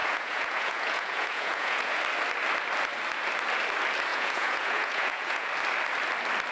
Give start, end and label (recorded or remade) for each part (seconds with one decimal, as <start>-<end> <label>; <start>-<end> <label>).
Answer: 0.0-2.0 remade; 2.0-4.1 recorded; 4.1-5.5 remade; 5.5-6.5 recorded